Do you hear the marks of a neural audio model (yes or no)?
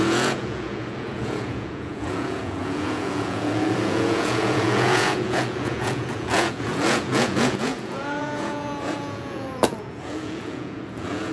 yes